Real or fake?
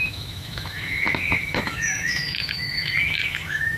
fake